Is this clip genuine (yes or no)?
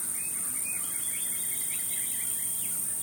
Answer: yes